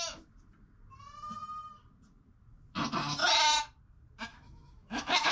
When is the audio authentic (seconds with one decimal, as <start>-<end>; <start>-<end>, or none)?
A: 0.0-4.3